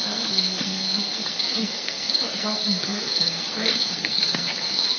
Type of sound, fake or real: fake